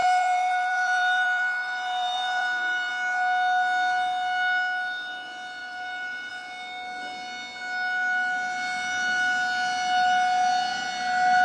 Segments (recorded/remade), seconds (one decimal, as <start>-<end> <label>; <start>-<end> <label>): 0.0-2.9 remade; 2.9-5.6 recorded; 5.6-6.3 remade; 6.3-11.4 recorded